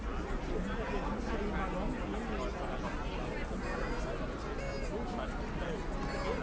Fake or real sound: real